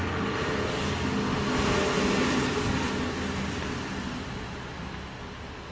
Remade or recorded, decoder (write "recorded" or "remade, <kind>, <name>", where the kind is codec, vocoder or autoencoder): recorded